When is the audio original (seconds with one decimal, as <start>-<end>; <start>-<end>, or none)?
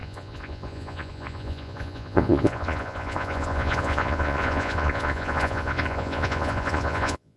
none